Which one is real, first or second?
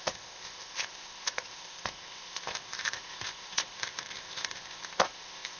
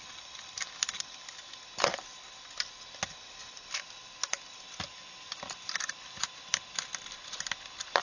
second